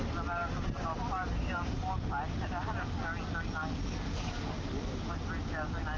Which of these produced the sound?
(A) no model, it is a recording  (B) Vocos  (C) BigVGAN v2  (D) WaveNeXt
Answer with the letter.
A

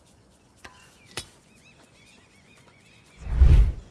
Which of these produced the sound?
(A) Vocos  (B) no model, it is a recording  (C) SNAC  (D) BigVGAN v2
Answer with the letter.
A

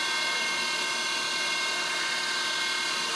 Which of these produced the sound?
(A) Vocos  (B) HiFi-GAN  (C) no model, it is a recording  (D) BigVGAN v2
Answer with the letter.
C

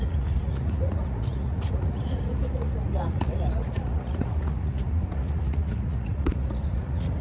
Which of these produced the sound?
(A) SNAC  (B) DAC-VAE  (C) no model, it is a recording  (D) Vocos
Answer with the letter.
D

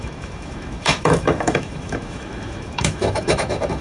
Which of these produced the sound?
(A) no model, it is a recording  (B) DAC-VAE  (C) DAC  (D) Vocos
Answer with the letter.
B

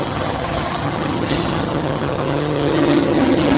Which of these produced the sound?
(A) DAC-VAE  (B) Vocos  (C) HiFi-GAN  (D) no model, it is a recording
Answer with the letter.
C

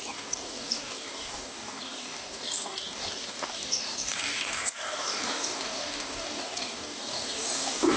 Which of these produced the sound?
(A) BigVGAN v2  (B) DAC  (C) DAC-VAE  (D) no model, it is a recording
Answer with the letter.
B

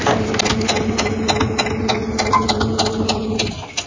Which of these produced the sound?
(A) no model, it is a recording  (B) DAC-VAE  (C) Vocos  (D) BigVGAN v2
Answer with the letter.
A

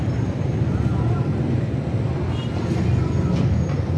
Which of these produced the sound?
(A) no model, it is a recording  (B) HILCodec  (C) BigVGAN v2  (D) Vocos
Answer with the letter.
A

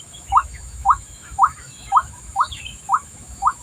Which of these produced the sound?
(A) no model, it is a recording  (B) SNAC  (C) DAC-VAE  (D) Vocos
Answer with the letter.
C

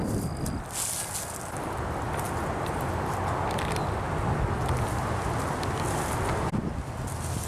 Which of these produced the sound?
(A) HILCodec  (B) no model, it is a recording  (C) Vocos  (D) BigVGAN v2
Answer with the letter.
B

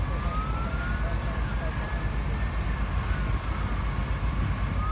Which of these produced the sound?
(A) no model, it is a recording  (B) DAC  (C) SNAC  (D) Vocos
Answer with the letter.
A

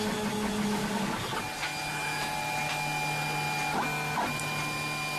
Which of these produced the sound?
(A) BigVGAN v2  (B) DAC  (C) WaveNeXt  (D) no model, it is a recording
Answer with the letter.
D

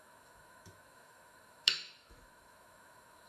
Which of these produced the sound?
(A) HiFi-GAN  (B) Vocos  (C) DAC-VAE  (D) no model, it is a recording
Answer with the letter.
C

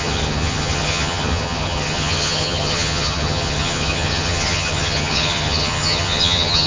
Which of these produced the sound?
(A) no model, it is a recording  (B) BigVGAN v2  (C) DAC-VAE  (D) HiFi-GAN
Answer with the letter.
D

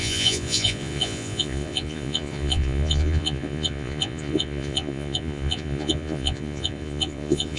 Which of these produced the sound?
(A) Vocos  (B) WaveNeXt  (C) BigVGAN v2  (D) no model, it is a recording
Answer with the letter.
A